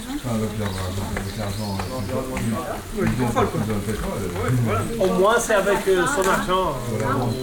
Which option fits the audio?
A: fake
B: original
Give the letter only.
B